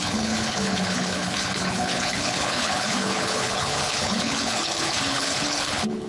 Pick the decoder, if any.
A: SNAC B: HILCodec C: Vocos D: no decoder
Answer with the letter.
B